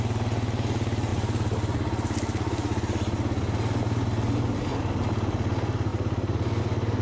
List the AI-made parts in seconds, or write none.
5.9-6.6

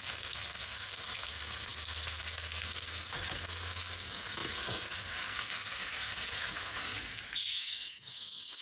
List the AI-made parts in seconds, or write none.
0.0-8.6

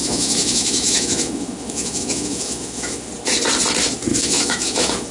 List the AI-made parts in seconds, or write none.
0.0-3.1; 4.1-5.1

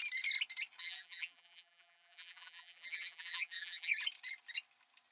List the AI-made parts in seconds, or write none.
0.8-3.9